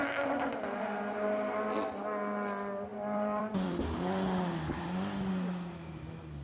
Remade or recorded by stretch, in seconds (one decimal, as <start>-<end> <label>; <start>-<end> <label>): 0.0-2.9 recorded; 2.9-3.8 remade; 3.8-6.4 recorded